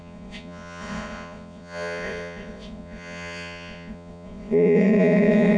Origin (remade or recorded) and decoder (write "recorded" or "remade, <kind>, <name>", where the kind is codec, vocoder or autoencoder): remade, vocoder, Vocos